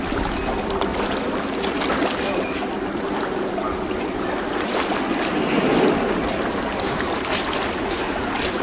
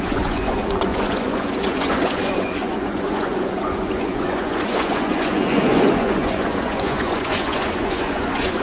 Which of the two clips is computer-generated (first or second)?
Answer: second